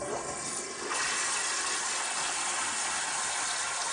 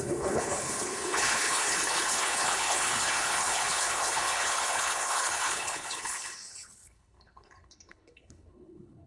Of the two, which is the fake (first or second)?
second